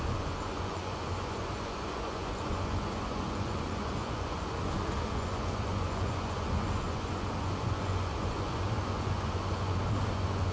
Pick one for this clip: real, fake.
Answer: fake